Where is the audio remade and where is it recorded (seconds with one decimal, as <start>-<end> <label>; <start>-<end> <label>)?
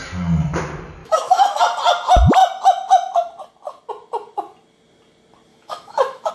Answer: 0.0-1.0 recorded; 1.0-1.6 remade; 1.6-5.5 recorded; 5.5-6.3 remade